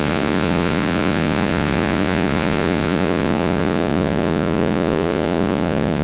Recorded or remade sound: remade